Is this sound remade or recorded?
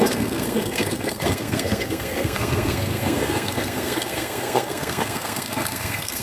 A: remade